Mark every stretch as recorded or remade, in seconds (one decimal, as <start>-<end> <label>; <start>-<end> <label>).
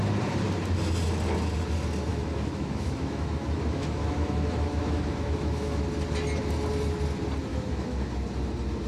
0.0-2.1 recorded; 2.1-5.8 remade; 5.8-7.5 recorded; 7.5-8.1 remade; 8.1-8.9 recorded